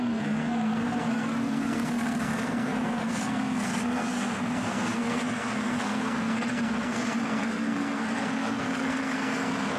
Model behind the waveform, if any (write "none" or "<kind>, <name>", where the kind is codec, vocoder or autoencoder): codec, SNAC